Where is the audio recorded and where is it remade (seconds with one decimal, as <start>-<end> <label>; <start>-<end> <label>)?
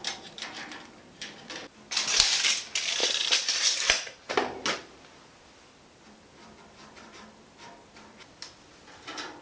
0.0-9.4 remade